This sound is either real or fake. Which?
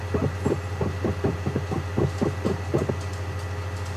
real